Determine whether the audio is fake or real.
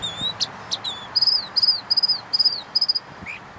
real